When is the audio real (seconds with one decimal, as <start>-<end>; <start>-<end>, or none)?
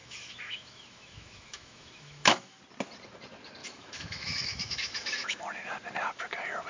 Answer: 2.6-3.6; 5.4-6.7